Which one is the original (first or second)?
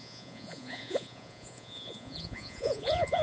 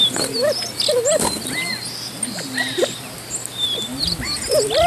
second